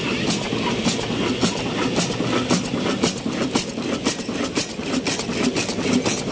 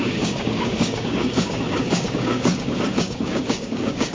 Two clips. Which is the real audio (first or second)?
first